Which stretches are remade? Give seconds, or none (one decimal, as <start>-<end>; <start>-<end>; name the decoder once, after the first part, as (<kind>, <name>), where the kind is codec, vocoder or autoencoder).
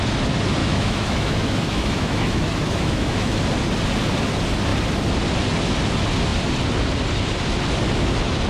0.6-3.4 (autoencoder, DAC-VAE)